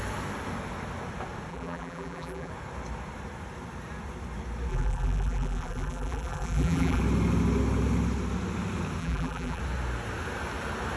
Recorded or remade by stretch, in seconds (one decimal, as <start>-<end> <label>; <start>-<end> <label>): 0.0-1.5 recorded; 1.5-2.5 remade; 2.5-4.7 recorded; 4.7-7.0 remade; 7.0-9.0 recorded; 9.0-9.6 remade; 9.6-11.0 recorded